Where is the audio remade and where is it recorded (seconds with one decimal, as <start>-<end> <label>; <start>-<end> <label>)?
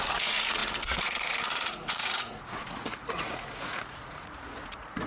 0.0-5.1 remade